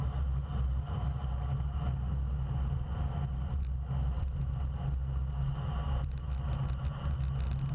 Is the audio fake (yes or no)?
no